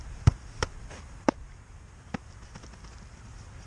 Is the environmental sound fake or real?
real